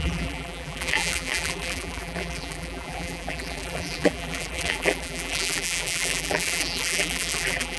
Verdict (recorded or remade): remade